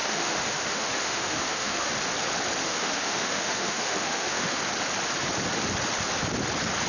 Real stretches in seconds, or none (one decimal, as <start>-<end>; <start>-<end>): 1.9-2.6; 4.6-6.9